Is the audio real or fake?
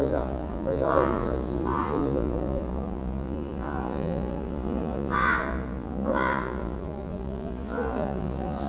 fake